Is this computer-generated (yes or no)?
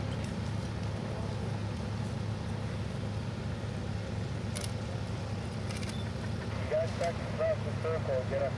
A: no